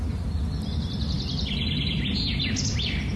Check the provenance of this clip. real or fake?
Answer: real